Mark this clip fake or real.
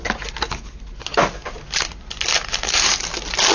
real